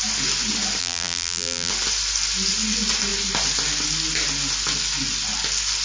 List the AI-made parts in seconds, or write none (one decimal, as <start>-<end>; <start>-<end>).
0.8-1.7